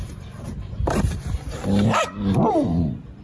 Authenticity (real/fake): fake